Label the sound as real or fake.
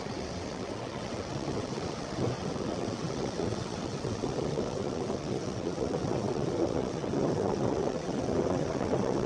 fake